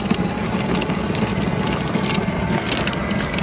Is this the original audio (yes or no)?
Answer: yes